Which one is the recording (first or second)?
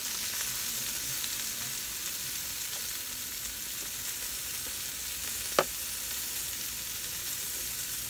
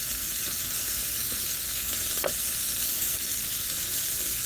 first